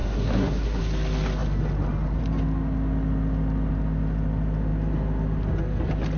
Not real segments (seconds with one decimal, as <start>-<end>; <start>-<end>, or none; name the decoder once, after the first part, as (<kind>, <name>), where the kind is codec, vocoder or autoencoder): 0.0-0.8 (codec, SNAC)